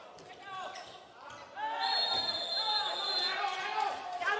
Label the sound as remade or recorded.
recorded